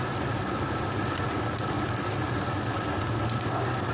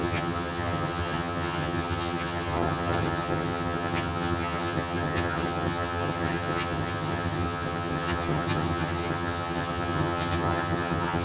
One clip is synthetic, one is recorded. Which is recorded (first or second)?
first